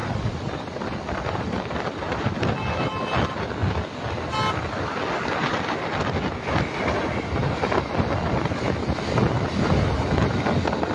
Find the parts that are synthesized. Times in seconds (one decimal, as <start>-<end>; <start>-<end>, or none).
0.0-2.2